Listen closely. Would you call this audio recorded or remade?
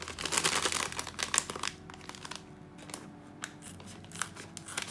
recorded